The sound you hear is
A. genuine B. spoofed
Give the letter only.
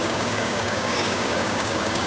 B